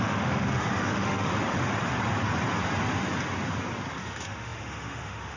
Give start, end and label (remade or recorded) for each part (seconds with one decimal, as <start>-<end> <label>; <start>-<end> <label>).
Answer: 0.0-1.3 remade; 1.3-3.9 recorded; 3.9-5.4 remade